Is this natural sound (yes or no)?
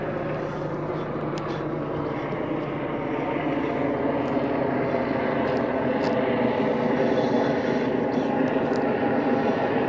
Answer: yes